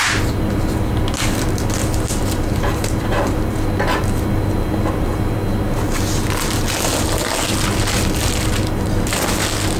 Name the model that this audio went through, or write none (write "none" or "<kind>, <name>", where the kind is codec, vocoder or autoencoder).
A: none